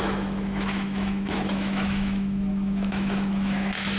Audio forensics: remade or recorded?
remade